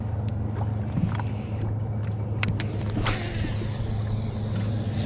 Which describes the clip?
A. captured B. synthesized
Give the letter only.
A